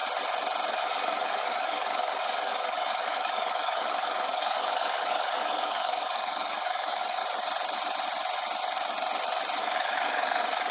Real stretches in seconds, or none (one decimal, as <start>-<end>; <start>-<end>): 0.0-0.7; 7.2-9.6